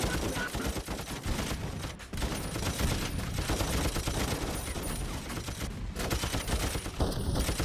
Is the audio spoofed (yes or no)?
no